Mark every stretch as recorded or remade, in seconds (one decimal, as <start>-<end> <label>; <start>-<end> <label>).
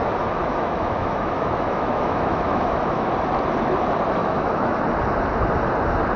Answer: 0.0-0.4 recorded; 0.4-3.1 remade; 3.1-4.2 recorded; 4.2-4.8 remade; 4.8-6.2 recorded